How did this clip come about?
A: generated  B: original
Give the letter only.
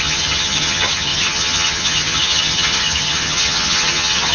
A